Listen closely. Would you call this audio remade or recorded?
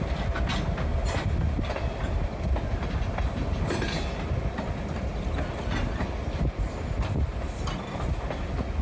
recorded